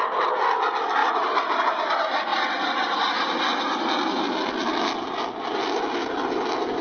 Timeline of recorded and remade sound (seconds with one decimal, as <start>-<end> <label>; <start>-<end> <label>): 0.0-6.8 recorded